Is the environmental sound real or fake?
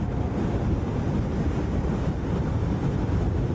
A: real